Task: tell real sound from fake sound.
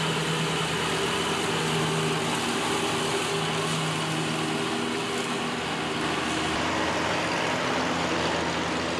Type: real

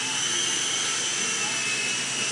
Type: real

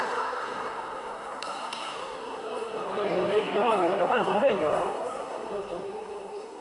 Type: fake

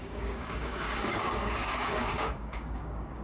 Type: fake